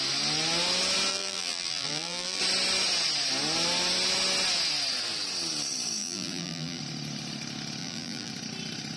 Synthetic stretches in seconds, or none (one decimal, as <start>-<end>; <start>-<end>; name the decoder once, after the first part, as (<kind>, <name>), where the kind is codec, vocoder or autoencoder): 1.1-2.4 (vocoder, BigVGAN v2); 6.0-6.8; 7.8-8.3

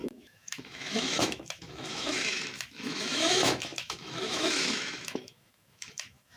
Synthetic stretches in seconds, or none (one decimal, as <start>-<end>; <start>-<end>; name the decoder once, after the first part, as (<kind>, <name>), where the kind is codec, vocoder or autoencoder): 0.0-6.4 (autoencoder, DAC-VAE)

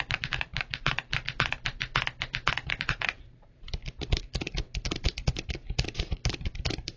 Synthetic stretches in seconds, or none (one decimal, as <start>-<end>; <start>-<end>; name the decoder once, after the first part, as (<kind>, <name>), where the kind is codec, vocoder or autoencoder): 0.0-1.1 (vocoder, BigVGAN v2); 2.5-3.8; 4.3-7.0

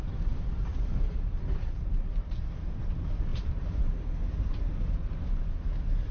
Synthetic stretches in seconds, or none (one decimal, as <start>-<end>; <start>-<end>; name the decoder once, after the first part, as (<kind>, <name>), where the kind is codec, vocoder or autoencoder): 0.7-2.8 (vocoder, BigVGAN v2); 3.3-4.1

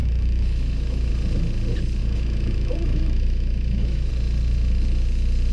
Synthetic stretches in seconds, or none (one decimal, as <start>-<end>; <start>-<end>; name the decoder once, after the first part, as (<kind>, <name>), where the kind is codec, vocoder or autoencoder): 0.0-1.1 (autoencoder, DAC-VAE); 2.0-4.1